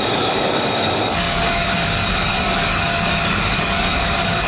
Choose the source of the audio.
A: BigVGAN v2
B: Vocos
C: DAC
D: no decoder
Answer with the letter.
C